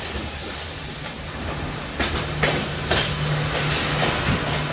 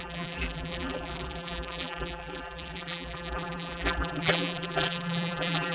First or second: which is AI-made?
second